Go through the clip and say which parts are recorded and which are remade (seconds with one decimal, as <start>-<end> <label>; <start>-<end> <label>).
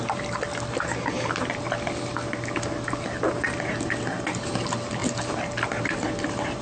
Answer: 0.0-6.6 recorded